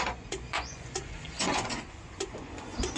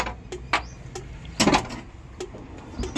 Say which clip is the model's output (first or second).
first